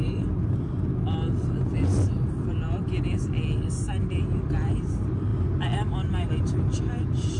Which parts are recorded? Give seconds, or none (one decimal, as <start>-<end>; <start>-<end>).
0.0-7.4